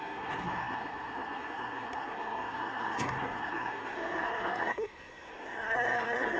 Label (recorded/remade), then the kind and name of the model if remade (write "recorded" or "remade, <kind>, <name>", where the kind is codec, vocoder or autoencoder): remade, codec, SNAC